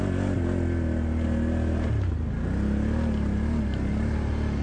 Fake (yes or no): no